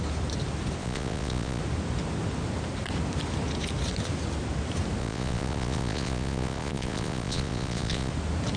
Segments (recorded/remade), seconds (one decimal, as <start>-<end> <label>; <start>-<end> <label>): 0.0-0.8 recorded; 0.8-1.6 remade; 1.6-5.0 recorded; 5.0-8.1 remade; 8.1-8.6 recorded